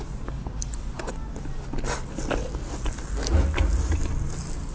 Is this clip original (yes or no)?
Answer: yes